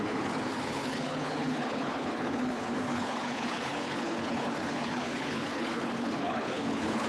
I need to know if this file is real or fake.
fake